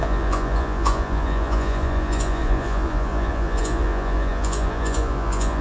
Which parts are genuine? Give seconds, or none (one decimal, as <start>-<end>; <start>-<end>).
none